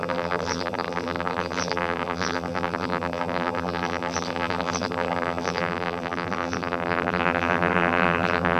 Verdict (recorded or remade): remade